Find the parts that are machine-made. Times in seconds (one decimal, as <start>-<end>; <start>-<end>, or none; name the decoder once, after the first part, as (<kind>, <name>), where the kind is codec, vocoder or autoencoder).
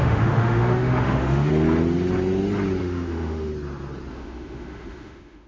0.0-1.5 (autoencoder, DAC-VAE); 2.8-3.5; 4.1-5.5